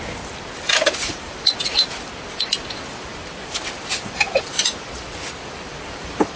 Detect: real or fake fake